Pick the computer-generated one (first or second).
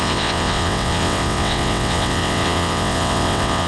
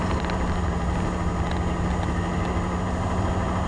first